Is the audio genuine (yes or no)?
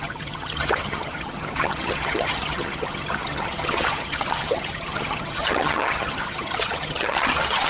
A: no